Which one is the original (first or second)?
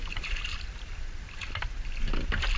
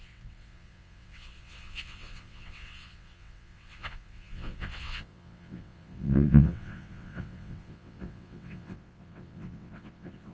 first